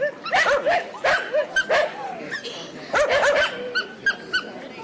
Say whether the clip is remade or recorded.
recorded